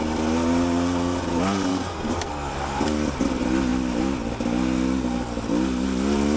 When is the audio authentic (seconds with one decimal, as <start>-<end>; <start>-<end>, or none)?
0.0-1.7; 2.3-6.4